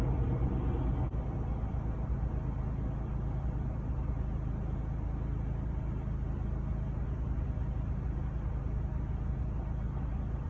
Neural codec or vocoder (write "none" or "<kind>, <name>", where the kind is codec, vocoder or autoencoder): none